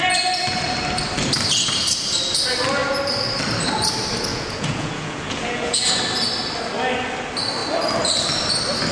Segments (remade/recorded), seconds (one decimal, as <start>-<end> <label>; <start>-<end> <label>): 0.0-4.3 recorded; 4.3-6.0 remade; 6.0-8.9 recorded